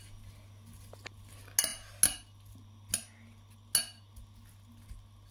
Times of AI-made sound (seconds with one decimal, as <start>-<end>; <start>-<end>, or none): none